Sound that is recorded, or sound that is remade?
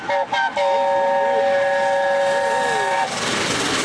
recorded